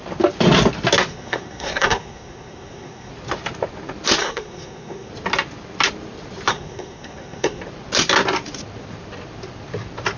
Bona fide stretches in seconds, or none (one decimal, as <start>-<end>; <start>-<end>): 0.0-1.1; 3.1-4.2; 5.1-6.5; 7.6-10.2